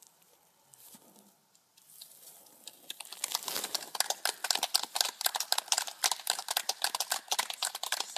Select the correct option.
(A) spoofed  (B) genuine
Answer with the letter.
B